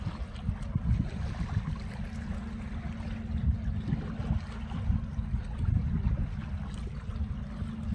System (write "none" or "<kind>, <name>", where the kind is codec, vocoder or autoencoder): none